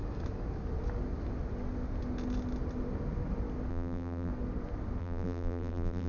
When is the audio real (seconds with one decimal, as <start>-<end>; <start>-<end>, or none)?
0.0-3.7; 4.3-5.0